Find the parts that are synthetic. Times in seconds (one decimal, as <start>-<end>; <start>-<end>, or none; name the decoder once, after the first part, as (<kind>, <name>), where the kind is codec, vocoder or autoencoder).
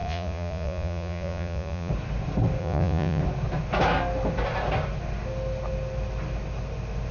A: 0.0-1.9 (vocoder, Vocos); 2.6-3.2